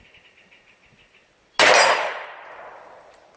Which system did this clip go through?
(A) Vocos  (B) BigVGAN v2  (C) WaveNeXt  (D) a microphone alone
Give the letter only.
D